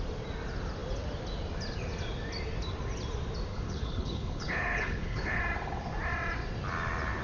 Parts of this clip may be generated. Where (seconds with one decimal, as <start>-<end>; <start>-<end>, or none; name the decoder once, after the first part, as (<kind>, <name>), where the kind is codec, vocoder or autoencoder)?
3.5-5.4 (codec, HILCodec)